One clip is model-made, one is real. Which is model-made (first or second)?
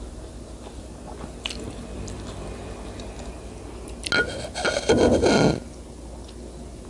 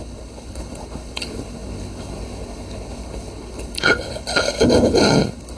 second